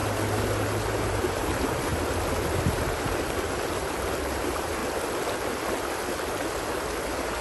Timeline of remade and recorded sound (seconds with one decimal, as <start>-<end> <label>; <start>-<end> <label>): 0.0-1.1 recorded; 1.1-1.9 remade; 1.9-4.2 recorded; 4.2-4.8 remade; 4.8-7.0 recorded; 7.0-7.4 remade